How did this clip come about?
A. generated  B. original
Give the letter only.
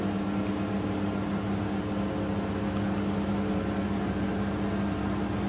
B